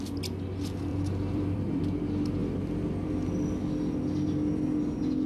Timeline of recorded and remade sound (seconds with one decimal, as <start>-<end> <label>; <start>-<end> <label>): 0.0-0.9 recorded; 0.9-1.8 remade; 1.8-2.4 recorded; 2.4-3.1 remade; 3.1-5.3 recorded